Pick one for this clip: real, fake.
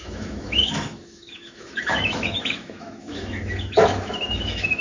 fake